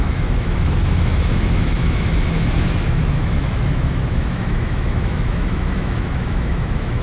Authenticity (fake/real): fake